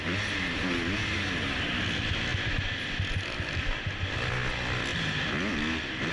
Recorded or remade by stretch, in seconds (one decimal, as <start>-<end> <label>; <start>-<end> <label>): 0.0-6.1 recorded